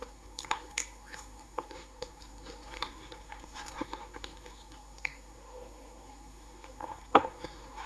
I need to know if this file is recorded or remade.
remade